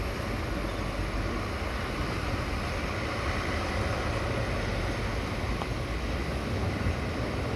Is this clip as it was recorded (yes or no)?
yes